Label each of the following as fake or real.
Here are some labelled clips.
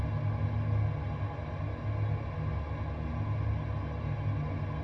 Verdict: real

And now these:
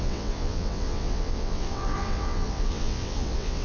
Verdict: fake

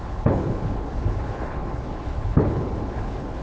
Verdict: fake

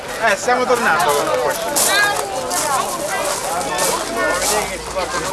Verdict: real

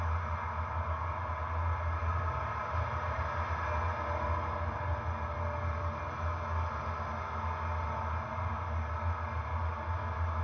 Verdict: real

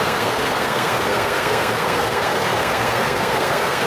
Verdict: fake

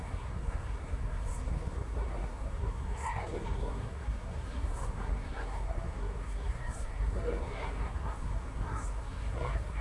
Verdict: fake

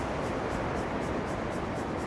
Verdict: real